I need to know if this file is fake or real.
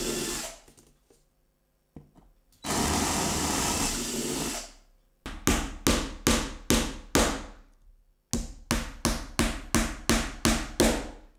real